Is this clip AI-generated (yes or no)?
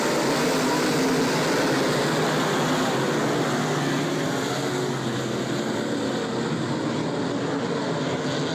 no